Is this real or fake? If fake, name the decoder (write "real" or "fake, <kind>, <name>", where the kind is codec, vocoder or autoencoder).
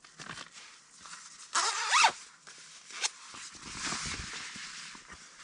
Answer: real